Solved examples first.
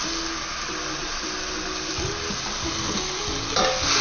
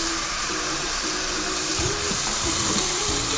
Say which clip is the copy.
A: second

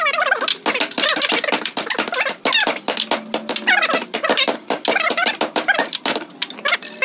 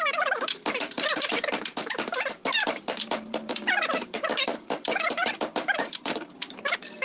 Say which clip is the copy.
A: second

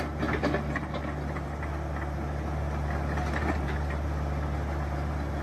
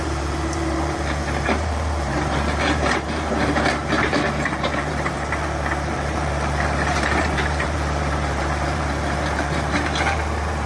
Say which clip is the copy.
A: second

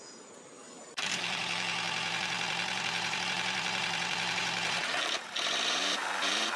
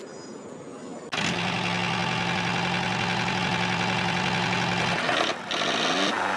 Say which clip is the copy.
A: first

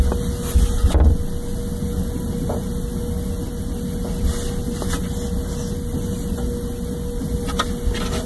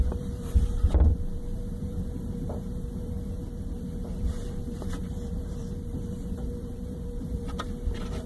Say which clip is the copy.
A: second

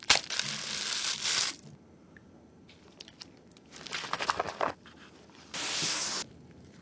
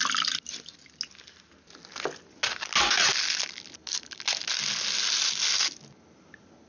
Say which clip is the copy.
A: first